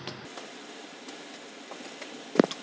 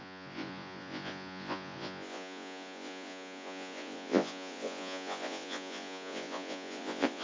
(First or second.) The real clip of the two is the first